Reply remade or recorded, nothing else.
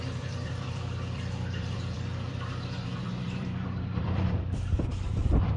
remade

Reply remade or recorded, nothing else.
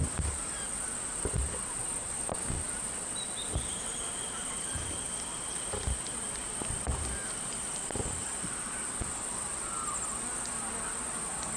recorded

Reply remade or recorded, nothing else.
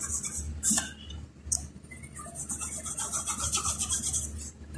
recorded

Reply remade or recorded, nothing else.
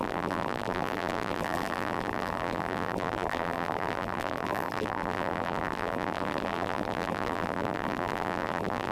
remade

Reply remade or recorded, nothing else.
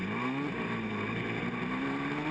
recorded